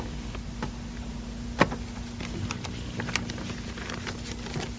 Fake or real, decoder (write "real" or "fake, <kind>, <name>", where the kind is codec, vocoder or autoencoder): real